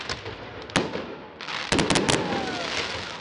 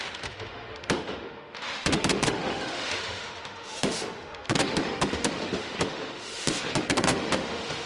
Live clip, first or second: first